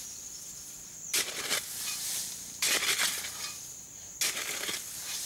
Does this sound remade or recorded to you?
recorded